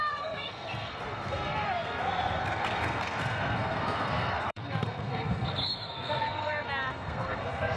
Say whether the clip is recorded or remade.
remade